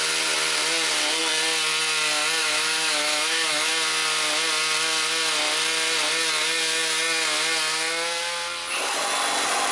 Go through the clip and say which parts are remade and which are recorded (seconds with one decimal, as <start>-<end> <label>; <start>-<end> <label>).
0.0-2.4 recorded; 2.4-3.7 remade; 3.7-9.7 recorded